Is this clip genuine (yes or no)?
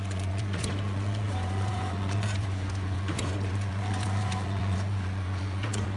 no